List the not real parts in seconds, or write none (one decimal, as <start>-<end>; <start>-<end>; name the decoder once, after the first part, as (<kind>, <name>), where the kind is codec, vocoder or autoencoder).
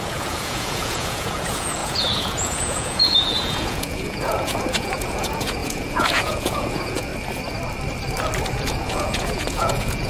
0.0-7.1 (vocoder, Vocos); 8.5-10.1